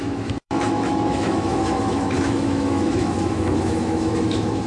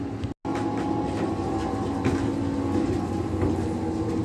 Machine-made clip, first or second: first